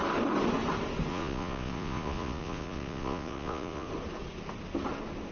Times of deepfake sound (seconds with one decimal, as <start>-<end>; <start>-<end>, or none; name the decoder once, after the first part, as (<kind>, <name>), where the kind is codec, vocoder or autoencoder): 1.1-3.9 (vocoder, Vocos)